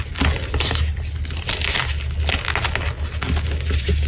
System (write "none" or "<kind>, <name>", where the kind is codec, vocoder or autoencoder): none